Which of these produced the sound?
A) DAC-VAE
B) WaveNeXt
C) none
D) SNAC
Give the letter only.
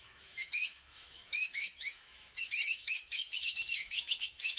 A